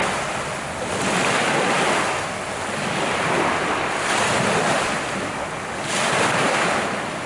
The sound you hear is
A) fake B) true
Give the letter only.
B